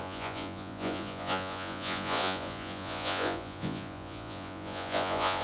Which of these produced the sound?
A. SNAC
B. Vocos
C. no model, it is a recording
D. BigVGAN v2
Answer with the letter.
B